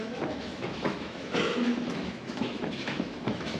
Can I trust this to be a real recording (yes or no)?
no